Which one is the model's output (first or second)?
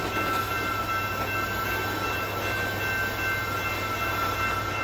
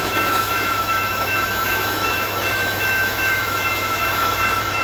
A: second